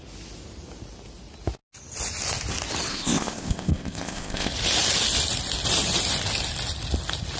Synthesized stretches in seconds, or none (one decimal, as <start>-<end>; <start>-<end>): 2.9-4.5